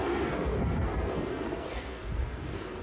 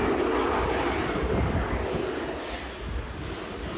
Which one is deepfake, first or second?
first